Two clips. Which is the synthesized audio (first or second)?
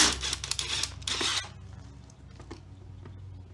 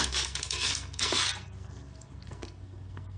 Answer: second